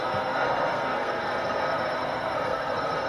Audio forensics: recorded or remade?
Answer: remade